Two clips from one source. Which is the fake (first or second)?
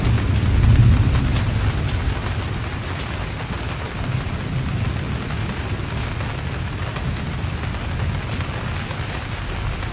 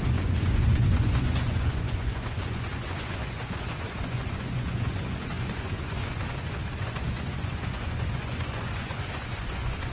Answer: second